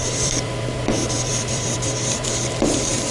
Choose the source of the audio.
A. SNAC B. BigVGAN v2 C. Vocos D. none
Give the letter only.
B